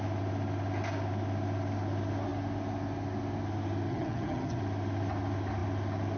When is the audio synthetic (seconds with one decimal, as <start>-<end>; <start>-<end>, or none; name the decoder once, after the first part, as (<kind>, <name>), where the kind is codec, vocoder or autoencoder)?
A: 3.9-4.6 (vocoder, HiFi-GAN)